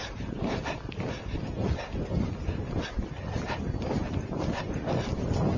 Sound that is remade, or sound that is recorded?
recorded